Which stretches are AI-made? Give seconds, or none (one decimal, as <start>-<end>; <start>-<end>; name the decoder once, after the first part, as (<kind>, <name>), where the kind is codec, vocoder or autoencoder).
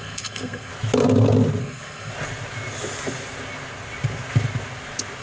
0.0-0.7 (codec, SNAC); 1.6-2.1